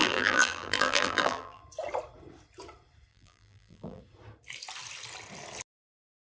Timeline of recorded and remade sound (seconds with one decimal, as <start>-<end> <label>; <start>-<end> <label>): 0.0-1.6 remade; 1.6-3.1 recorded; 3.1-4.0 remade; 4.0-6.4 recorded